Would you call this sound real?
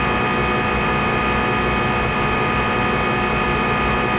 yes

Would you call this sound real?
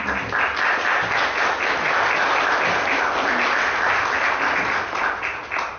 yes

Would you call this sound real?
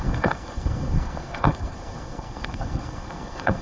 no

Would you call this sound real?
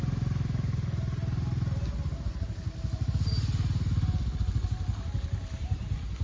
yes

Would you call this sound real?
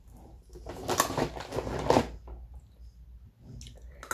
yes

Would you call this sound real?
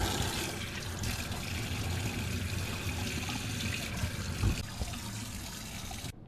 yes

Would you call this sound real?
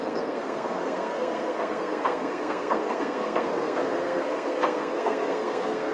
no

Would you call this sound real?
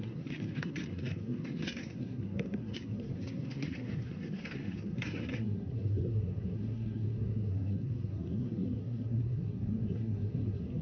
no